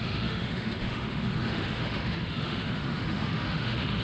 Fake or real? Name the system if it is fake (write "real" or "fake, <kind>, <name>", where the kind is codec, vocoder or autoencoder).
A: fake, autoencoder, DAC-VAE